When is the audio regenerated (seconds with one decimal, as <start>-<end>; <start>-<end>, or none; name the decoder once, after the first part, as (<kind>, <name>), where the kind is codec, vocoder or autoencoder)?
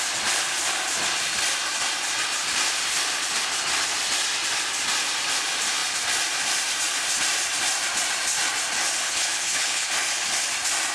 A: 9.0-9.9 (codec, HILCodec)